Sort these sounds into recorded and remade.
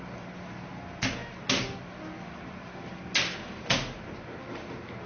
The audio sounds recorded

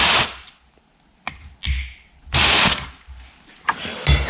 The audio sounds recorded